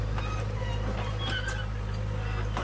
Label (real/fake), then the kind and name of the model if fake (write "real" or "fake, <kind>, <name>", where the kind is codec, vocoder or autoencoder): real